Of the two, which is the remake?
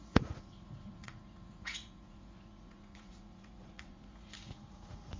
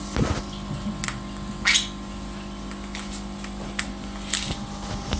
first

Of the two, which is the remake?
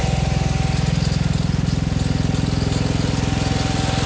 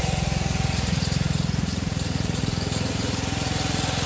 second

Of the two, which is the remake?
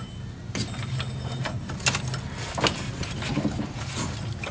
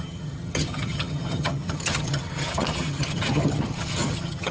second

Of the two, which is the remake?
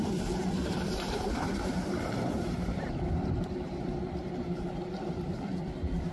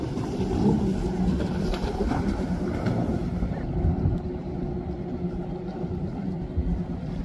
first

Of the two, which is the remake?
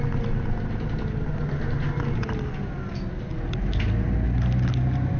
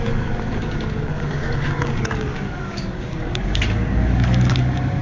second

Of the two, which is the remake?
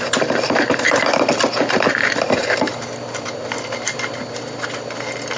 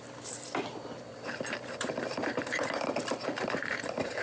second